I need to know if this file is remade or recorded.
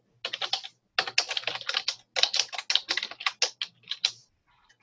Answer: recorded